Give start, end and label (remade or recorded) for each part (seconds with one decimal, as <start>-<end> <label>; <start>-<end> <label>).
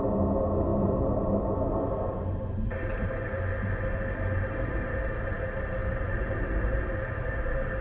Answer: 0.0-0.7 recorded; 0.7-1.4 remade; 1.4-5.8 recorded; 5.8-6.8 remade; 6.8-7.8 recorded